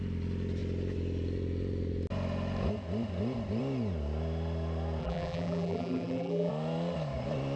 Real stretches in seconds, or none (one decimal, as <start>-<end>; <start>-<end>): 0.0-5.0; 6.5-7.6